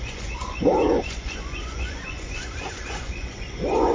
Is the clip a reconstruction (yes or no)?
yes